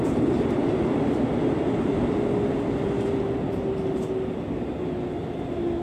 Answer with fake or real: real